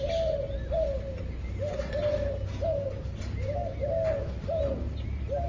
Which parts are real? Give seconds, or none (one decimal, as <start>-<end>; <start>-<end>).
0.0-5.5